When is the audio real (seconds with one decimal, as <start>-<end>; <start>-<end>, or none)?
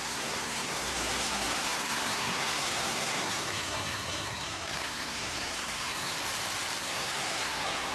6.1-6.8